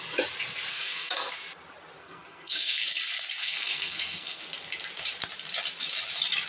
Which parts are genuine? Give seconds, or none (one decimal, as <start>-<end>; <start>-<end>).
0.0-0.7; 1.3-2.0; 2.8-3.4; 4.4-6.5